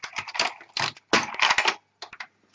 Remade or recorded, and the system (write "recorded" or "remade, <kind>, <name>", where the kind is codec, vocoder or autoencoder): recorded